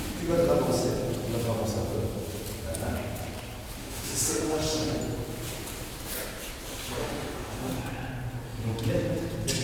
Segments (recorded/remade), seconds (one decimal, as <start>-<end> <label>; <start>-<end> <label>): 0.0-3.8 recorded; 3.8-5.0 remade; 5.0-7.0 recorded; 7.0-7.7 remade; 7.7-9.6 recorded